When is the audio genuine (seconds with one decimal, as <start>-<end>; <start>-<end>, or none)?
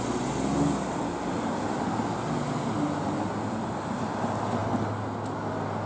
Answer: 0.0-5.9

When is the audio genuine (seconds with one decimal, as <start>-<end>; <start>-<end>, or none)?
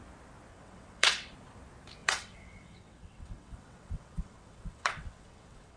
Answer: 0.0-0.5; 1.3-2.0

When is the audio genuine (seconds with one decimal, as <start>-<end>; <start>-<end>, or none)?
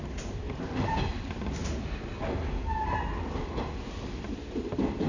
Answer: 0.0-5.1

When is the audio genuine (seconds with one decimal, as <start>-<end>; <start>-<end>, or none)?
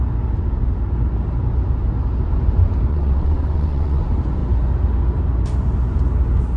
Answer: 0.0-2.9; 4.0-6.6